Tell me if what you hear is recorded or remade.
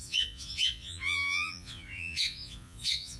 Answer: remade